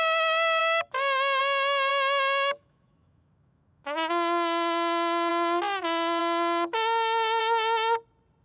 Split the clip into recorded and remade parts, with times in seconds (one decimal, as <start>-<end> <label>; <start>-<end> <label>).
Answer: 0.0-0.6 recorded; 0.6-1.4 remade; 1.4-1.9 recorded; 1.9-5.3 remade; 5.3-8.4 recorded